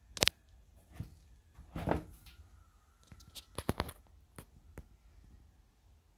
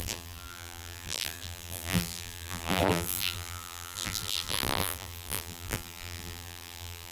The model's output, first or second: second